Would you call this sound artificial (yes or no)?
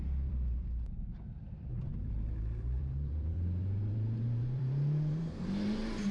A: yes